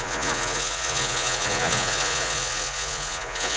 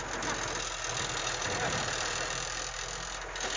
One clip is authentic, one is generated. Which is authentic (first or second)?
second